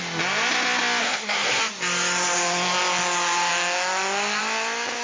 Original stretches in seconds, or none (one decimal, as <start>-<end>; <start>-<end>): 0.0-1.0; 1.6-5.0